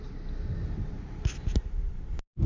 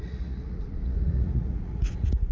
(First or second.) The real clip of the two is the first